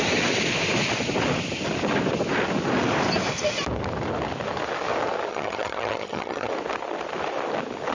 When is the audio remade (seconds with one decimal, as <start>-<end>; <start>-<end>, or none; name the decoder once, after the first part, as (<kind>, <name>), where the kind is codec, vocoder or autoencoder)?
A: 5.3-6.5 (vocoder, HiFi-GAN)